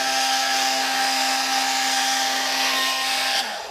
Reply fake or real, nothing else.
fake